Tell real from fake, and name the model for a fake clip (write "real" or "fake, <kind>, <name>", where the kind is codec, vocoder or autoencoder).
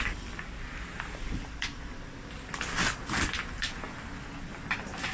real